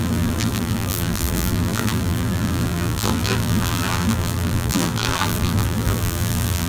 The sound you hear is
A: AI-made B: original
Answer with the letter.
A